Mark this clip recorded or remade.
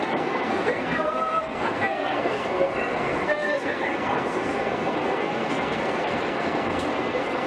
remade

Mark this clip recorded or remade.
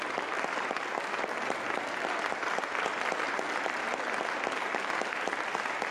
recorded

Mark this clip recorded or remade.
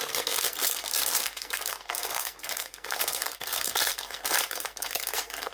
remade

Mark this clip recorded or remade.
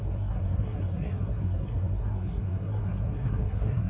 remade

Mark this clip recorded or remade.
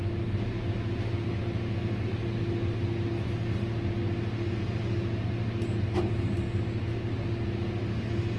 recorded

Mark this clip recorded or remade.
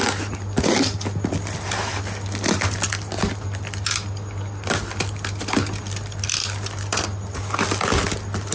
recorded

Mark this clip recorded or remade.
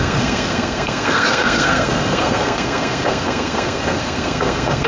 remade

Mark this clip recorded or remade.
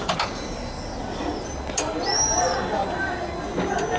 recorded